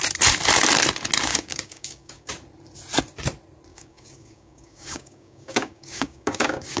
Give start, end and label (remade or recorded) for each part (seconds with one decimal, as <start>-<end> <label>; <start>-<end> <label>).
0.0-1.3 recorded; 1.3-2.3 remade; 2.3-3.7 recorded; 3.7-6.8 remade